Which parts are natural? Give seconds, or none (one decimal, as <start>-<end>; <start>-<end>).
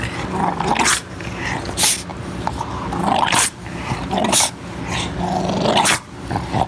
0.0-2.1; 4.6-6.7